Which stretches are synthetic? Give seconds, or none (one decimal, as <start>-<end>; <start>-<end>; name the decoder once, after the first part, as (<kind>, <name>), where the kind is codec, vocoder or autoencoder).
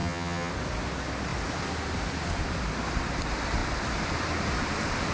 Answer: 0.0-0.5 (vocoder, HiFi-GAN)